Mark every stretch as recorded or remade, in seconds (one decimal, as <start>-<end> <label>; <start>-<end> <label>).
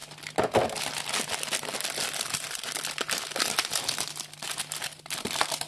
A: 0.0-5.7 recorded